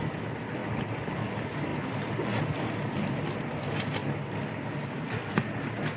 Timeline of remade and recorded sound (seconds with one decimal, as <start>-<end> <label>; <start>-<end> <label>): 0.0-6.0 recorded